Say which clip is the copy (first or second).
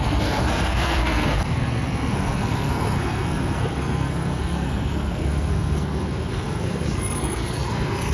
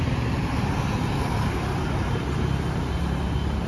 first